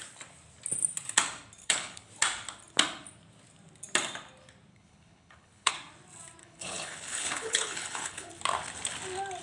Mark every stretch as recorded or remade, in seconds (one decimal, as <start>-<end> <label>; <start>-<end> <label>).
0.0-1.6 recorded; 1.6-2.1 remade; 2.1-4.7 recorded; 4.7-5.7 remade; 5.7-6.4 recorded; 6.4-8.3 remade; 8.3-9.4 recorded